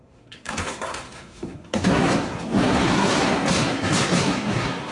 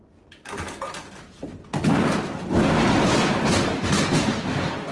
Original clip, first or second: second